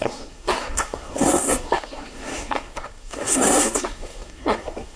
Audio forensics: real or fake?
fake